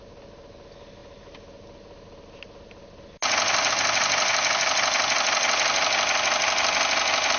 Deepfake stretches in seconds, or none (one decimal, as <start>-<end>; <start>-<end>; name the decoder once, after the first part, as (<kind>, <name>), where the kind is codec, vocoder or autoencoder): none